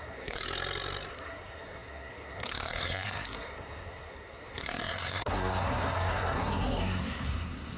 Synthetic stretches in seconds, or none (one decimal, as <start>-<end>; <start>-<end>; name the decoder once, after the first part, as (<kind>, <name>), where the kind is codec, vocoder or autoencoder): 0.0-0.4 (codec, SNAC); 1.1-7.8